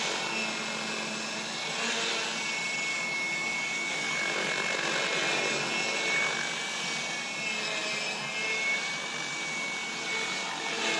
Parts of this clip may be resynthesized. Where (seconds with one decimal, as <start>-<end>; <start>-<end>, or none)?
2.9-4.5